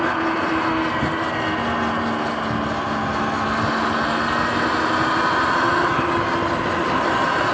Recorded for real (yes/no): yes